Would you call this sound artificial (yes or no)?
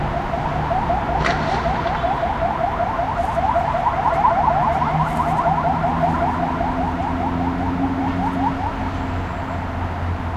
no